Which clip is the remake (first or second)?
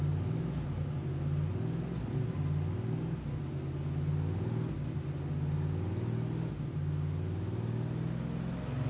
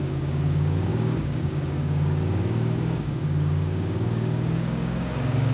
second